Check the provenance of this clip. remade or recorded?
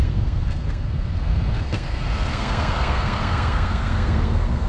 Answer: remade